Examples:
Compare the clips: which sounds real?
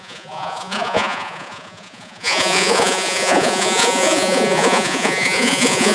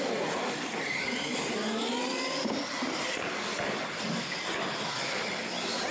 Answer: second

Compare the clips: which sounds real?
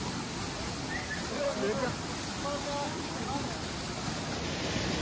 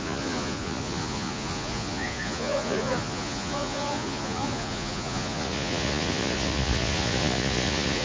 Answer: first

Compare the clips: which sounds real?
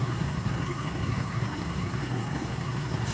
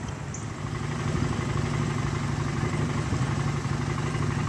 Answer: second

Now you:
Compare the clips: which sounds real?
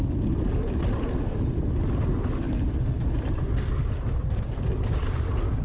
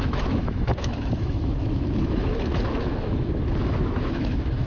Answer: first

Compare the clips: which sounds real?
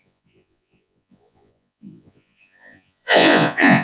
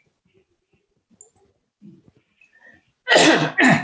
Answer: second